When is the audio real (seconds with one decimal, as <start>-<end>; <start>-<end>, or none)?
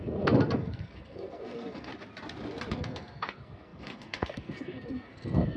1.9-2.7